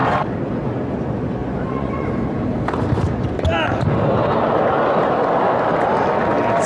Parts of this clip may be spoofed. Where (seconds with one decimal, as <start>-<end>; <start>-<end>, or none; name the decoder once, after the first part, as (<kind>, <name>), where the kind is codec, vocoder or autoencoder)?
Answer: 1.4-2.1 (vocoder, Vocos)